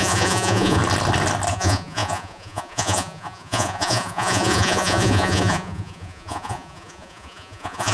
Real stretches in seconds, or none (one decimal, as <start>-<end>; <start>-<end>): 0.8-1.5